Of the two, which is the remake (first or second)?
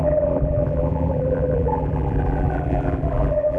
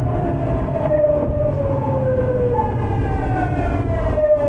first